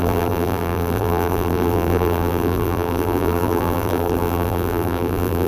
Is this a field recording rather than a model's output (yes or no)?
no